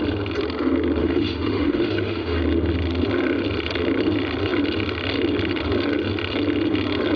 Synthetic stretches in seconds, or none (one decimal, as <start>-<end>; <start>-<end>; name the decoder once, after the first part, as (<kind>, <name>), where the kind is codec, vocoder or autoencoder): 1.0-2.4 (autoencoder, DAC-VAE)